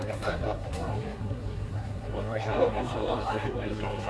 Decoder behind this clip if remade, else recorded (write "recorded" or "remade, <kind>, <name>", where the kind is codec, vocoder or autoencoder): remade, codec, SNAC